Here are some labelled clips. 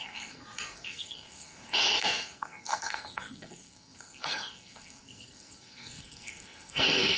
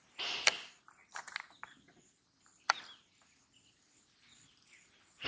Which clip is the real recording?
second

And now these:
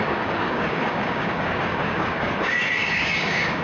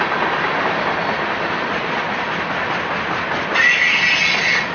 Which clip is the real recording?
second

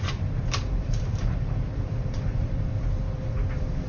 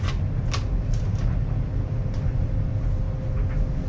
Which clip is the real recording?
second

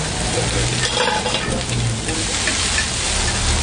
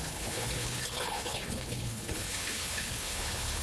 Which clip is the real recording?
first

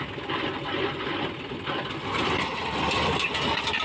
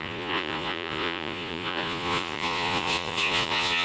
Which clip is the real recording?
first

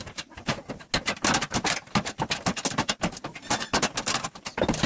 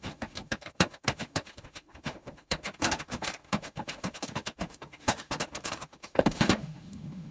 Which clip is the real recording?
first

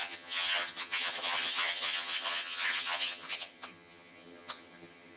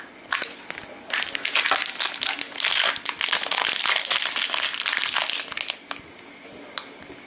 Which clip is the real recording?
second